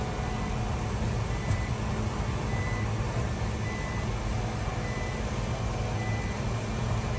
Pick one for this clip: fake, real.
real